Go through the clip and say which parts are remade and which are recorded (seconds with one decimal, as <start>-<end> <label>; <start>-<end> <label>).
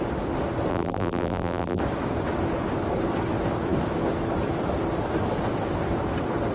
0.0-0.7 recorded; 0.7-1.8 remade; 1.8-6.5 recorded